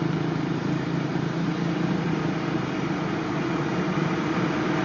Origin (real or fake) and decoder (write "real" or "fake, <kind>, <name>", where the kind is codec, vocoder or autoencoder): real